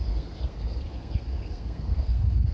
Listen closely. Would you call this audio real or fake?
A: fake